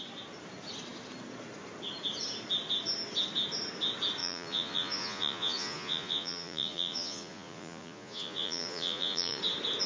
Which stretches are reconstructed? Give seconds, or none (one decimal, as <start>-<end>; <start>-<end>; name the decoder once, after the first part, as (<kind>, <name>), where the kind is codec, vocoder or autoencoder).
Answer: 4.2-9.4 (vocoder, Vocos)